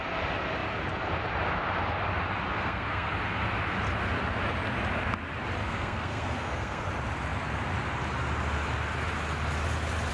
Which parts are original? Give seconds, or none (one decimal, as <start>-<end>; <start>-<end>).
0.0-2.5; 3.1-5.6; 6.8-10.1